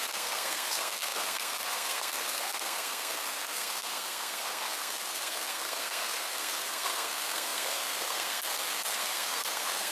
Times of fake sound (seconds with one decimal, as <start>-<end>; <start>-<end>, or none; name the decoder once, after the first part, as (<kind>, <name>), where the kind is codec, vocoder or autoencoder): 0.0-9.9 (codec, SNAC)